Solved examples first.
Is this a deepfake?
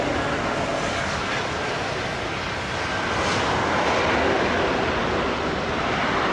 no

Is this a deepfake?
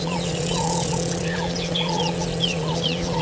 yes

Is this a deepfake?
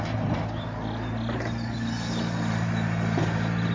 no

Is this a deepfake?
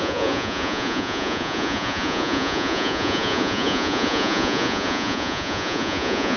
yes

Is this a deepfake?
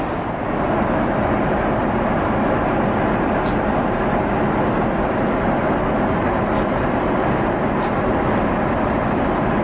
no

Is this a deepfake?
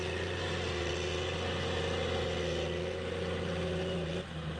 no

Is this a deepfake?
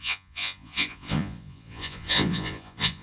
yes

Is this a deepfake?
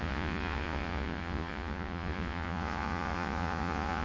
yes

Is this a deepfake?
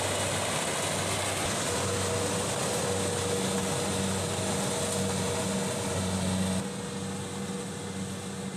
no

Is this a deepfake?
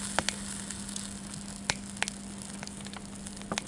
no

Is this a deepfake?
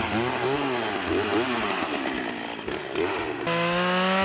no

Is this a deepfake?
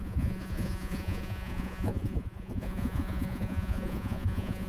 yes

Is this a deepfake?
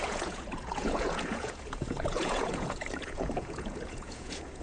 yes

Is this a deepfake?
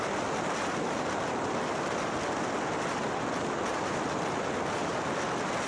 no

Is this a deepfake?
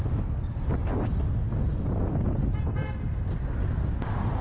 no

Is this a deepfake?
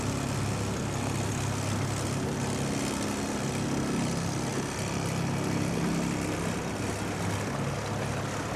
no